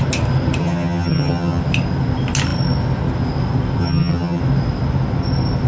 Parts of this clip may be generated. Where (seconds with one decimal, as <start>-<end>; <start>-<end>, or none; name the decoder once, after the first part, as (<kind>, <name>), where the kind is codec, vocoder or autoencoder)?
0.6-1.6 (vocoder, HiFi-GAN); 3.8-4.4